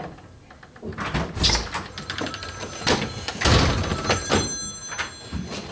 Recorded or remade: recorded